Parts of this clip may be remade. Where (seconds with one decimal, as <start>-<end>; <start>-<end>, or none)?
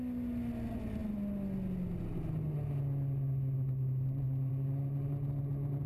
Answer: none